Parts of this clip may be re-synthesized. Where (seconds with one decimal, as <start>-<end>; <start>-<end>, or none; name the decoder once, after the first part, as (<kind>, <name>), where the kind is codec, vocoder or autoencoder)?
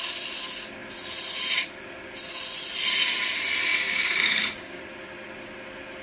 3.7-4.8 (codec, DAC)